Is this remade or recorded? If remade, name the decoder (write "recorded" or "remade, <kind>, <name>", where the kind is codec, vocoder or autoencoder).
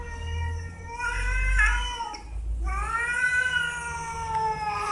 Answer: recorded